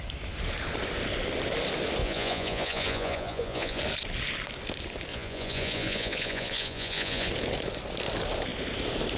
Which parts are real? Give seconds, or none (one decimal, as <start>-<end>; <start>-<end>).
0.0-2.0; 3.8-5.1; 7.3-9.2